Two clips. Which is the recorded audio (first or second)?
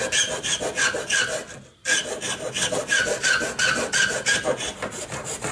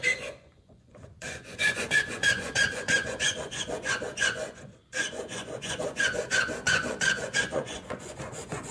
first